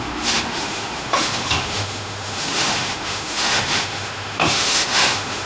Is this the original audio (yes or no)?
no